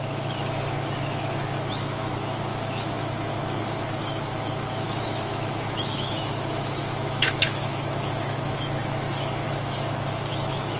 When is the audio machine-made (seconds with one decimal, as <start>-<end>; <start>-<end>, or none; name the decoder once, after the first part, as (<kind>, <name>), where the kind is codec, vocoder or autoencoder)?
0.0-10.8 (autoencoder, DAC-VAE)